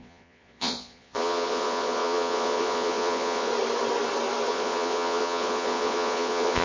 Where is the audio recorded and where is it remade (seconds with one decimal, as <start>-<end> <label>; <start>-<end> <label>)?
0.0-3.5 remade; 3.5-4.5 recorded; 4.5-6.6 remade